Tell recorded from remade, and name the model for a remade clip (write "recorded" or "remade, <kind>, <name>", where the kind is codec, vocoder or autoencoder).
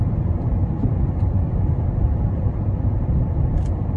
remade, vocoder, BigVGAN v2